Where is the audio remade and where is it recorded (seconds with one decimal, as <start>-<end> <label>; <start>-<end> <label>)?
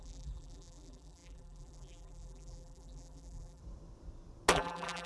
0.0-3.6 remade; 3.6-4.5 recorded; 4.5-5.1 remade